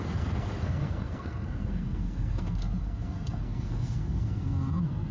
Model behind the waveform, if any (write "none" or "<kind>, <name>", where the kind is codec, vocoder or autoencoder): codec, SNAC